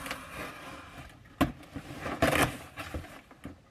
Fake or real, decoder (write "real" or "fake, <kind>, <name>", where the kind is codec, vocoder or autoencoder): real